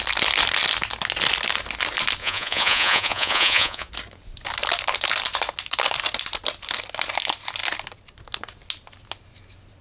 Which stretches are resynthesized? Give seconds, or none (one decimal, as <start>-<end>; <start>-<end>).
2.2-3.9

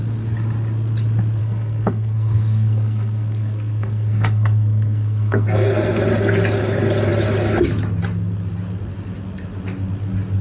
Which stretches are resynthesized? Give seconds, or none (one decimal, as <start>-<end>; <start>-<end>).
1.4-6.0

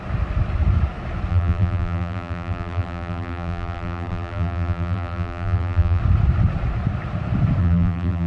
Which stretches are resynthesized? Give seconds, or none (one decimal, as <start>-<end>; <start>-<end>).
1.3-6.0; 7.6-8.3

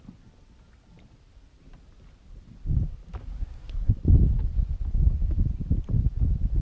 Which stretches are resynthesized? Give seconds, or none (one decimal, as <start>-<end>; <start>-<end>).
3.2-3.9

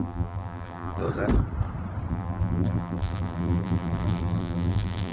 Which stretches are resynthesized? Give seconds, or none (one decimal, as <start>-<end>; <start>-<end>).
0.0-1.0; 2.1-5.1

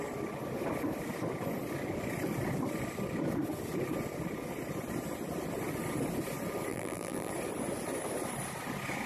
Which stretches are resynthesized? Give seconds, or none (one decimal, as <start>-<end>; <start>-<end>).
6.7-7.3

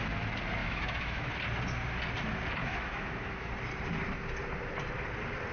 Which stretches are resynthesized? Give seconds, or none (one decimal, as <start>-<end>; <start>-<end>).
0.6-1.3; 2.6-3.5